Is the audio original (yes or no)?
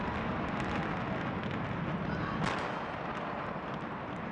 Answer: yes